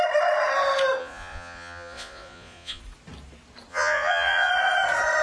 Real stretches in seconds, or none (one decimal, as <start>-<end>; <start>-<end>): 0.0-1.0; 2.8-3.7; 4.5-5.2